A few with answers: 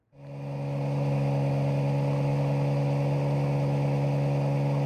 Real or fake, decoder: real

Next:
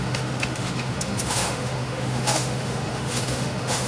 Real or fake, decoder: fake, autoencoder, DAC-VAE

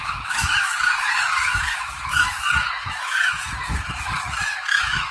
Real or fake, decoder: fake, autoencoder, DAC-VAE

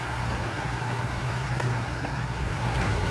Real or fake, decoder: fake, codec, SNAC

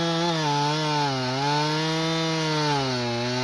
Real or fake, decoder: real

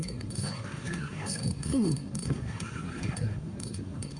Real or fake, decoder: fake, codec, SNAC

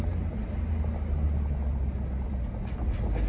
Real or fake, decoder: real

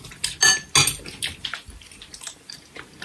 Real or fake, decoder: real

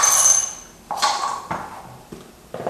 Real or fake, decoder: real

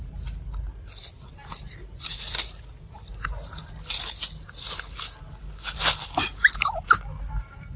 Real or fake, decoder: real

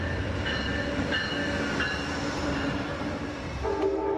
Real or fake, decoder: real